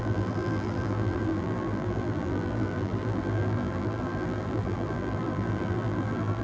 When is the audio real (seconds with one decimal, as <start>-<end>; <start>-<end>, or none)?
none